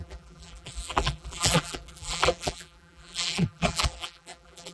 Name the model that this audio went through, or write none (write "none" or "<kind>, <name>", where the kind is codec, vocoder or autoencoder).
vocoder, BigVGAN v2